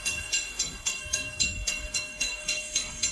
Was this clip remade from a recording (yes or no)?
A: yes